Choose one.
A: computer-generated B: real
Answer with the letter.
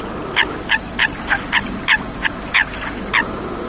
B